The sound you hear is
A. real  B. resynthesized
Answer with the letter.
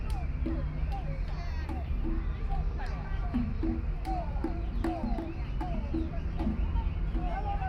A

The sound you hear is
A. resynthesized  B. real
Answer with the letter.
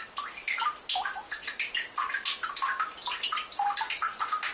B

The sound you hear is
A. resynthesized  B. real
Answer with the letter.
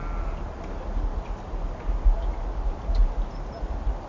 B